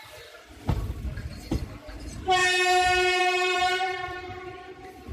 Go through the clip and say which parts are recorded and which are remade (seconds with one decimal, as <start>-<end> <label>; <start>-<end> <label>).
0.0-2.4 remade; 2.4-3.2 recorded; 3.2-5.1 remade